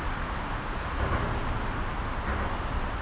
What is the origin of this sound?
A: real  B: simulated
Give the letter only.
A